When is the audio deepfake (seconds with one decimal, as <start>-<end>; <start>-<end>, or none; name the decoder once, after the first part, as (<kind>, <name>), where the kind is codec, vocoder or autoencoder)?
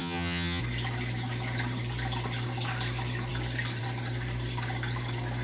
0.0-0.6 (vocoder, HiFi-GAN)